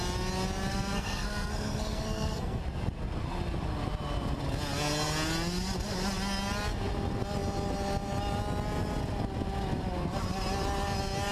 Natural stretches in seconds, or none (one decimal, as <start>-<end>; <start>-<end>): 0.0-0.7; 2.6-11.3